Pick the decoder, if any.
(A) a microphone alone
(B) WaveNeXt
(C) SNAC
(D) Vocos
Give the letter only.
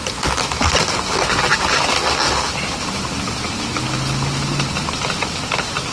A